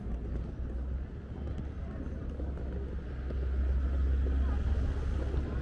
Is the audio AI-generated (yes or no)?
no